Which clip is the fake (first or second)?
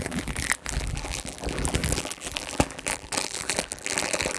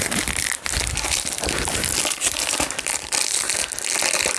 first